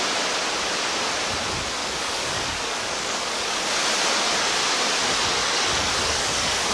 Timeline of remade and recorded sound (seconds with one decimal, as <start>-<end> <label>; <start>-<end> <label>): 0.0-1.8 recorded; 1.8-3.6 remade; 3.6-5.4 recorded; 5.4-6.7 remade

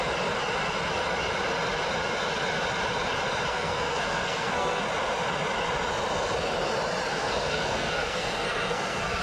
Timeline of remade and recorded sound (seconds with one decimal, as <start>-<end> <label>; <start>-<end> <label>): 0.0-3.5 recorded; 3.5-4.8 remade; 4.8-7.1 recorded; 7.1-9.2 remade

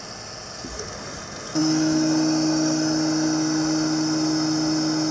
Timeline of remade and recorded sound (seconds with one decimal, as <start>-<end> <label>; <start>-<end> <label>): 0.0-5.1 recorded

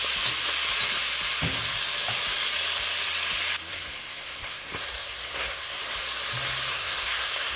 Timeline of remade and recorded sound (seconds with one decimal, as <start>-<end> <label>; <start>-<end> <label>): 0.0-3.7 recorded; 3.7-5.8 remade; 5.8-6.7 recorded; 6.7-7.6 remade